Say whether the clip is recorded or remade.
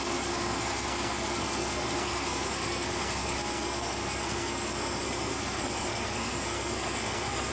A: remade